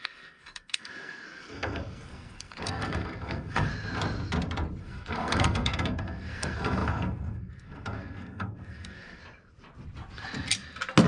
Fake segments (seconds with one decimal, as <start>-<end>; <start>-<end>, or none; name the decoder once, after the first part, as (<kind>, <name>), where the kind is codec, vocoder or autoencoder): 0.0-3.7 (codec, SNAC); 4.8-9.2